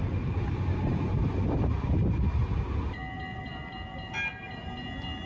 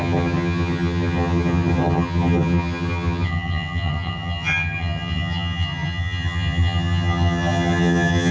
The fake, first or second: second